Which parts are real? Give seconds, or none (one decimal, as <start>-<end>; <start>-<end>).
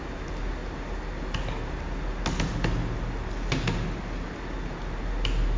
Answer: 0.0-5.6